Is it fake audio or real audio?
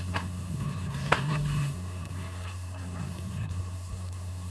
fake